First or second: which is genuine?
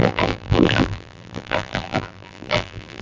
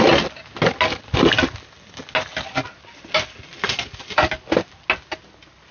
second